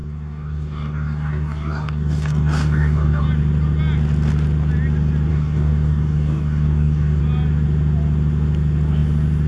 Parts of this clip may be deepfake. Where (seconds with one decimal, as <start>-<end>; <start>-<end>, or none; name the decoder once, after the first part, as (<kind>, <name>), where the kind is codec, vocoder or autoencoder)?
0.0-3.2 (codec, DAC); 5.3-7.2